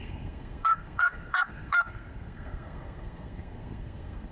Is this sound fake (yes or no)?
yes